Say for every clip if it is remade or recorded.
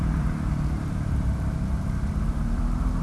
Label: remade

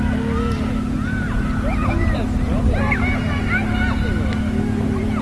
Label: recorded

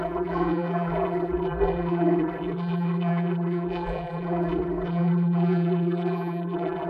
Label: remade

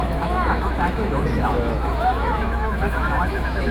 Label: remade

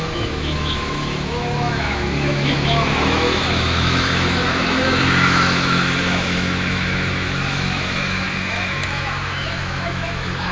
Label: remade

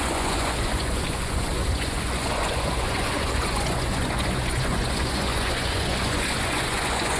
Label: remade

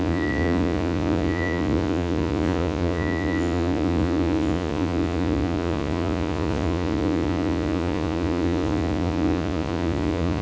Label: remade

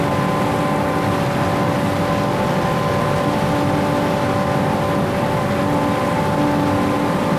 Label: recorded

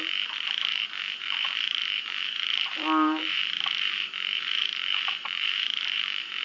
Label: remade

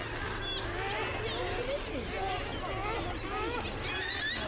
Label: recorded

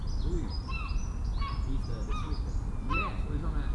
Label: recorded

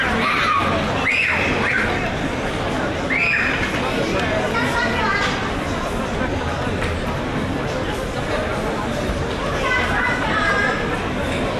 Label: recorded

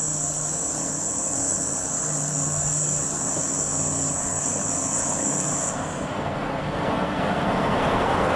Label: remade